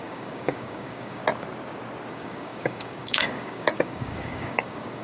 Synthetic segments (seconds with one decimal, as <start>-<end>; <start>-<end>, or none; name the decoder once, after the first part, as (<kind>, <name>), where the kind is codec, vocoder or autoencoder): 0.0-1.2 (codec, DAC); 2.1-5.0